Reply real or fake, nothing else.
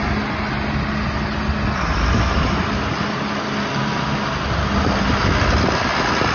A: real